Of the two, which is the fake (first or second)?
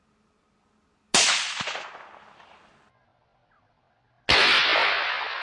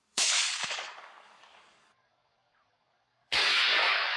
second